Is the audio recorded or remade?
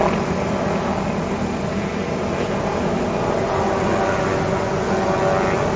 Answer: recorded